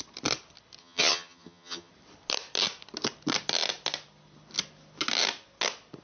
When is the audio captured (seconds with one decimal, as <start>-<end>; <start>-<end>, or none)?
0.0-0.8; 1.9-6.0